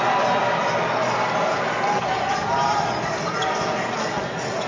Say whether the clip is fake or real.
real